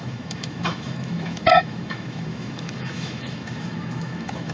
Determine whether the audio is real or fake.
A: fake